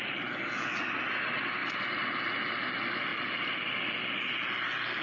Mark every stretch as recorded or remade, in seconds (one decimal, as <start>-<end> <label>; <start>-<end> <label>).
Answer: 0.0-5.0 recorded